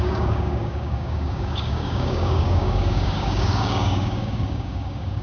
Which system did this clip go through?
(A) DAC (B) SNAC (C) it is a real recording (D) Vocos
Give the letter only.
A